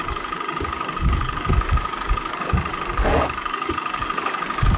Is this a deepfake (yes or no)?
yes